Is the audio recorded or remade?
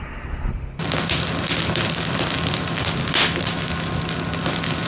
recorded